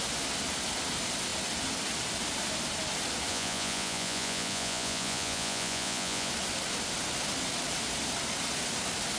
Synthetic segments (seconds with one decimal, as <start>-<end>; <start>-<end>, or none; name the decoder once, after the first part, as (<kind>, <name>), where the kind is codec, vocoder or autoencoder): 3.3-6.3 (vocoder, Vocos)